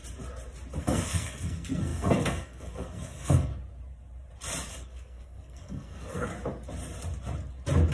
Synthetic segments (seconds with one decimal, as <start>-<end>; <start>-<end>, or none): 0.8-3.5; 4.7-6.3